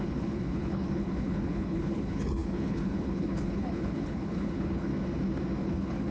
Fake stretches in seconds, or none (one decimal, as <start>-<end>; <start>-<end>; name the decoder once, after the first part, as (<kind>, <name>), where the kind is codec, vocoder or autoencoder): 0.0-4.9 (codec, HILCodec); 5.6-6.1